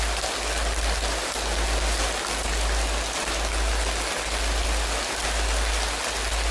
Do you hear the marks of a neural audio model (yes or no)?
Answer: no